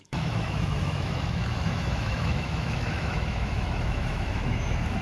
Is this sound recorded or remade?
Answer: remade